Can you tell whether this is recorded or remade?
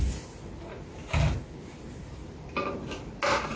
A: recorded